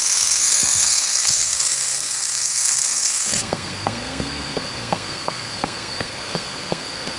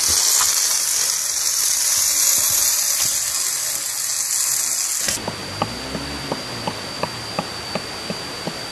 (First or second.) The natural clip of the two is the second